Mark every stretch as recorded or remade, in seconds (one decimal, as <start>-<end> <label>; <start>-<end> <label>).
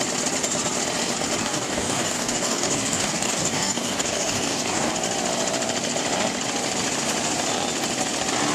0.0-1.4 recorded; 1.4-4.9 remade; 4.9-8.5 recorded